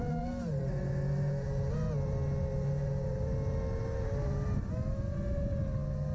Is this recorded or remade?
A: recorded